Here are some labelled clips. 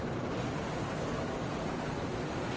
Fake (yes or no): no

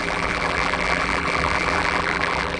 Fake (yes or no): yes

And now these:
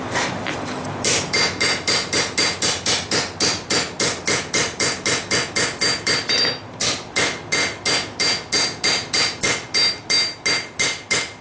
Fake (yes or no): no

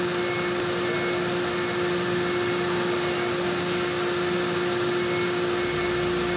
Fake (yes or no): no